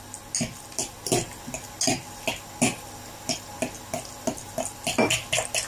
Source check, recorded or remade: recorded